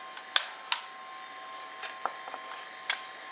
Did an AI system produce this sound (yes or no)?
no